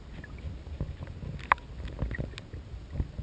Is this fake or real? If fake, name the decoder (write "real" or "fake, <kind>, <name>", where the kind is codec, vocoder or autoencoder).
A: real